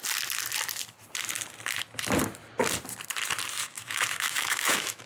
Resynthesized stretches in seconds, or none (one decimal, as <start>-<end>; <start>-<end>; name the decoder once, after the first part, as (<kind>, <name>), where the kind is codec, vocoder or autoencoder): 3.6-5.1 (autoencoder, DAC-VAE)